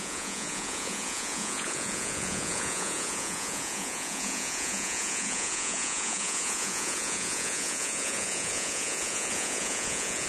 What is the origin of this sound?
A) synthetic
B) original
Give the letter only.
A